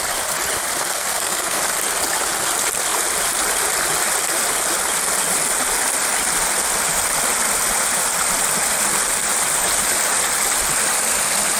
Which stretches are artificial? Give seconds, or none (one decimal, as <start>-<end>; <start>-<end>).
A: 0.8-1.6